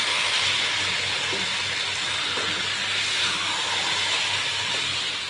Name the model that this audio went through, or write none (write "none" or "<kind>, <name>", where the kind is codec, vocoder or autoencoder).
none